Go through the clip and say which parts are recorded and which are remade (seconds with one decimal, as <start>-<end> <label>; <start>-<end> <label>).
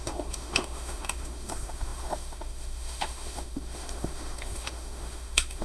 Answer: 0.0-5.6 remade